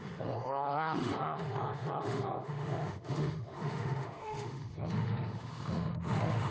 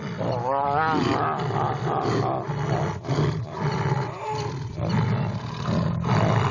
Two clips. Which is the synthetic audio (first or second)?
first